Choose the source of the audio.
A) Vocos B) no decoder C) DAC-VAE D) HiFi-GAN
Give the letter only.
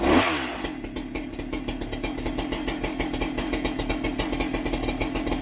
B